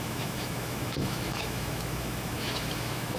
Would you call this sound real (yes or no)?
no